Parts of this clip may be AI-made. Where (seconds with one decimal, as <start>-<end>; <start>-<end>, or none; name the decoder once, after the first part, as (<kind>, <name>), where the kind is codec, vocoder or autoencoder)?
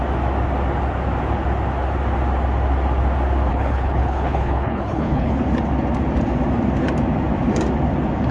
3.5-5.4 (codec, HILCodec)